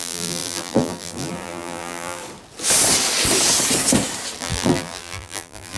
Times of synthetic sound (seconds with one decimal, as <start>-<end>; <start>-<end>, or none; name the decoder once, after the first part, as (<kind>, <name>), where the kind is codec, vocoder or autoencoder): 0.0-2.2 (vocoder, BigVGAN v2); 4.4-5.8